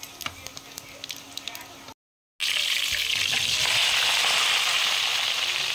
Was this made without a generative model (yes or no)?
yes